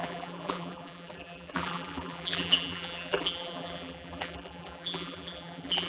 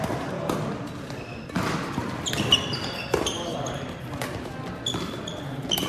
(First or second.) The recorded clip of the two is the second